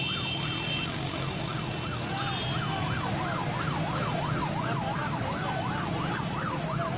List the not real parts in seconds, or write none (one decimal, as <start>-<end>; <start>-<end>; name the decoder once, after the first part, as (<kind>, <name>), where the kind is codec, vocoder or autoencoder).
none